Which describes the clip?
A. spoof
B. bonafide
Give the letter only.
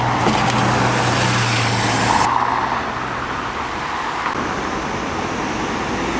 B